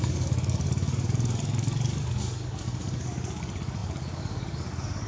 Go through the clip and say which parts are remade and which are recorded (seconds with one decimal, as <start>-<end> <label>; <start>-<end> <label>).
0.0-5.1 remade